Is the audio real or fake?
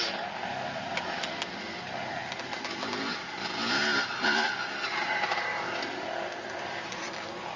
real